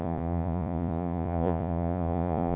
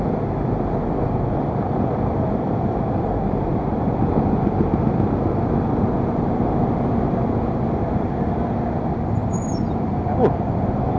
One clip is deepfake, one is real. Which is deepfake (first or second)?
first